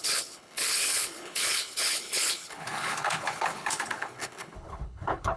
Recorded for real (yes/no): no